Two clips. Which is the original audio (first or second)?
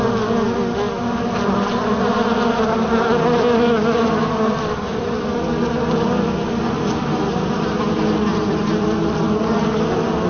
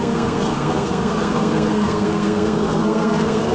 first